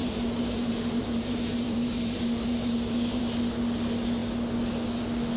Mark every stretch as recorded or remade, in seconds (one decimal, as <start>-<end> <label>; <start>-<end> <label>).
0.0-3.2 remade; 3.2-5.4 recorded